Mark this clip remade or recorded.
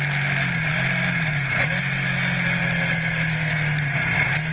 recorded